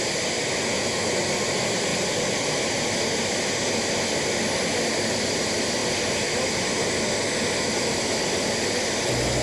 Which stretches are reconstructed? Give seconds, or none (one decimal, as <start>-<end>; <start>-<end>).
0.7-1.2